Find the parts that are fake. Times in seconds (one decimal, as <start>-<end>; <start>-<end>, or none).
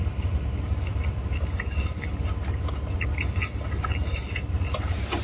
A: none